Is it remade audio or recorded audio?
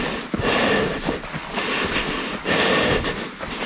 recorded